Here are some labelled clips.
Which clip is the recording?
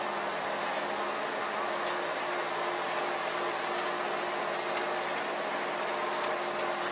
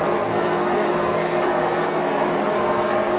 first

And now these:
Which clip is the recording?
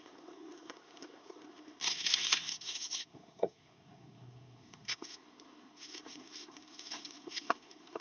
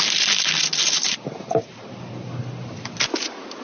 second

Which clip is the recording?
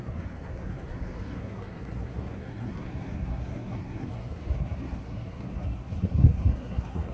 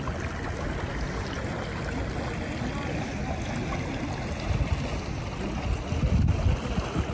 second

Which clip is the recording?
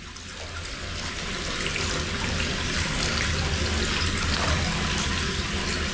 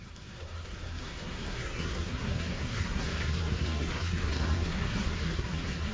first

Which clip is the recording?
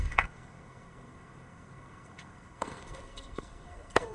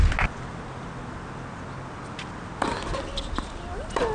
second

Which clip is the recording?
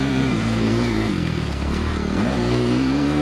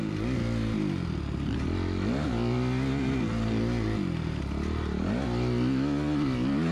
second